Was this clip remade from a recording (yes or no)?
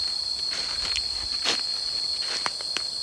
no